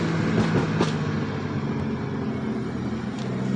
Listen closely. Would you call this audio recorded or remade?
recorded